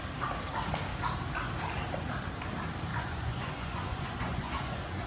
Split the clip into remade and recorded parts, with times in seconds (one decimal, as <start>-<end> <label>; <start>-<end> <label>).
0.0-2.9 recorded; 2.9-5.1 remade

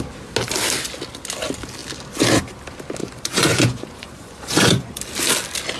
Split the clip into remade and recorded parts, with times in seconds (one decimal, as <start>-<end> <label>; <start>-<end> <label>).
0.0-3.0 recorded; 3.0-5.0 remade; 5.0-5.8 recorded

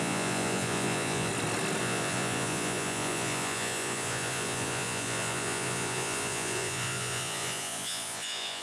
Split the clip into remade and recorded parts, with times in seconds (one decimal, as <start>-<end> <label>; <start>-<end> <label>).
0.0-1.3 remade; 1.3-1.8 recorded; 1.8-8.6 remade

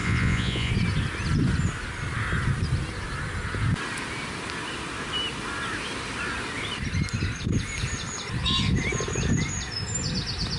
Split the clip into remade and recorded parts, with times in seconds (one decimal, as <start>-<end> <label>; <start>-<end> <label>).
0.0-0.7 remade; 0.7-10.6 recorded

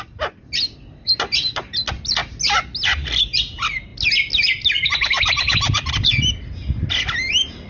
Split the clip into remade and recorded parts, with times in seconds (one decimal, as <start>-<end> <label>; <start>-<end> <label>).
0.0-7.7 recorded

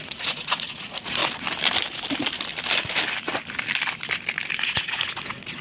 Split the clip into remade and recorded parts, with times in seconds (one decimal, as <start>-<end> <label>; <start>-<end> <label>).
0.0-1.2 remade; 1.2-4.6 recorded; 4.6-5.6 remade

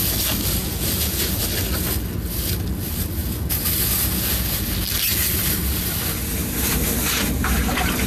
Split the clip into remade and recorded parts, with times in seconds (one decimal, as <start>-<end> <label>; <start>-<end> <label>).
0.0-0.6 recorded; 0.6-1.4 remade; 1.4-3.2 recorded; 3.2-4.7 remade; 4.7-8.1 recorded